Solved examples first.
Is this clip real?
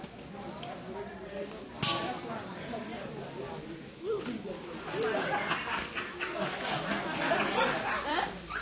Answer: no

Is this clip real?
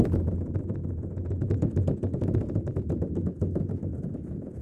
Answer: no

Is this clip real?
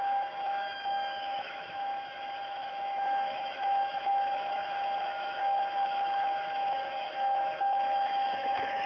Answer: no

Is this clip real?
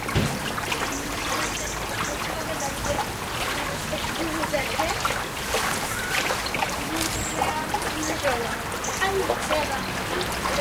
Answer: yes